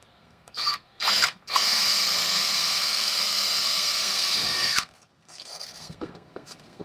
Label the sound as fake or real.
fake